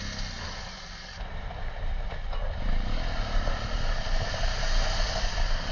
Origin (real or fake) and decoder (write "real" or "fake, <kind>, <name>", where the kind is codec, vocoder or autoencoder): real